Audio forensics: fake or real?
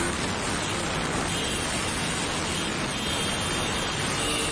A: real